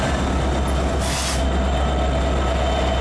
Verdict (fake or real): real